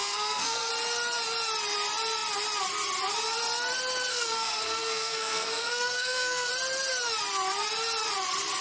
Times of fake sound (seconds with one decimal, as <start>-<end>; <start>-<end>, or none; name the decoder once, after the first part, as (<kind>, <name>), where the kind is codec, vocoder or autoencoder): 0.0-0.7 (codec, SNAC); 4.1-6.5